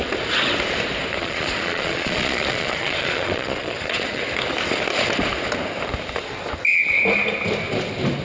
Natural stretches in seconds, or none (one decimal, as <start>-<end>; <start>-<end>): 0.0-1.2; 4.2-8.2